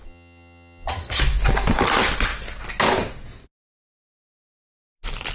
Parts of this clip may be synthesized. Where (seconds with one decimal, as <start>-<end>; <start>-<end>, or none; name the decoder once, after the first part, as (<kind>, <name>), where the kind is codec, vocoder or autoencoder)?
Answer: 0.0-1.2 (vocoder, HiFi-GAN)